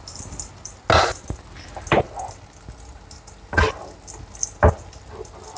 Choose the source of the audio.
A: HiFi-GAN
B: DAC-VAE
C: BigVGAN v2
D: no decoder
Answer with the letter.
D